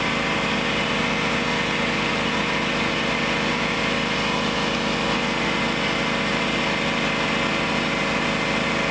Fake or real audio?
real